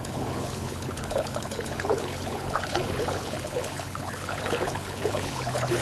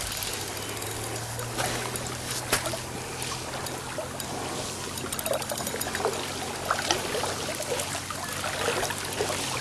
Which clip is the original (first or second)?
second